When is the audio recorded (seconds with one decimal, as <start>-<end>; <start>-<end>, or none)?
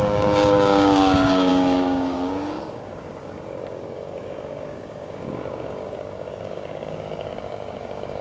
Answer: none